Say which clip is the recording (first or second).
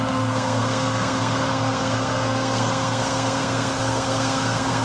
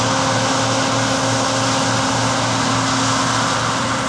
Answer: second